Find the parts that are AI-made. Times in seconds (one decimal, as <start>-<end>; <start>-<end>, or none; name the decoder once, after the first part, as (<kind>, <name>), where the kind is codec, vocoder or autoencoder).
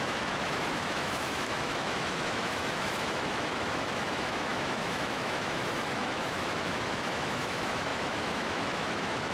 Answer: 0.0-9.3 (autoencoder, DAC-VAE)